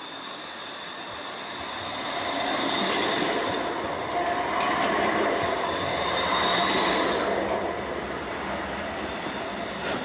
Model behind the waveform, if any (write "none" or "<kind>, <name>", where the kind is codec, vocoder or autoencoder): none